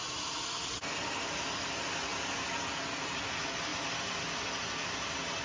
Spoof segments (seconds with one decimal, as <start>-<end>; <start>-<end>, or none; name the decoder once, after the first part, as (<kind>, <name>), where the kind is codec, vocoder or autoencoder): none

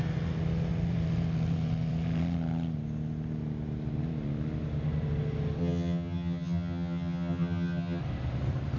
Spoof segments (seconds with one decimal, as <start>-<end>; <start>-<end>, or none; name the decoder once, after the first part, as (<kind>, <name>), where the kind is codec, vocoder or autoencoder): 5.6-8.0 (vocoder, HiFi-GAN)

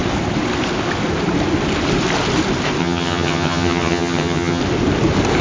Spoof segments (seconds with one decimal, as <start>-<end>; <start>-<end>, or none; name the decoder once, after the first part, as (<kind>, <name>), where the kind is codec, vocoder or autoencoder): 2.8-4.6 (vocoder, HiFi-GAN)

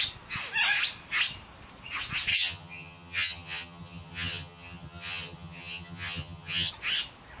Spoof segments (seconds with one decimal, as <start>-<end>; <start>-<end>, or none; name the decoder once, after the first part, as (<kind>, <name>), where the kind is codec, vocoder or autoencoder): 2.3-6.7 (vocoder, HiFi-GAN)

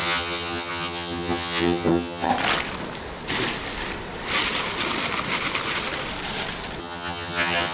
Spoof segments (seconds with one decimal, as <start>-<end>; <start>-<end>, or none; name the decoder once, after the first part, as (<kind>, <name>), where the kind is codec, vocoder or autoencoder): 0.0-2.3 (vocoder, HiFi-GAN); 6.8-7.7

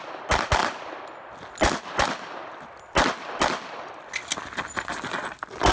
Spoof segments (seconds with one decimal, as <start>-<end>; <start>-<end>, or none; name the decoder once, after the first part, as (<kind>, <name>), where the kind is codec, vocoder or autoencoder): none

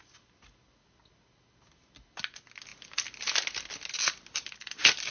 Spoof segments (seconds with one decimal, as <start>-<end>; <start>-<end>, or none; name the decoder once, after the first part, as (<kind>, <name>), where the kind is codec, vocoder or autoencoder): none